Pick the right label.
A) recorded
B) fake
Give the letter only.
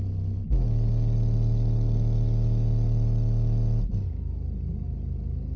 A